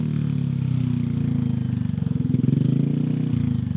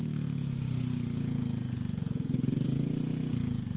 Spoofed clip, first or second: second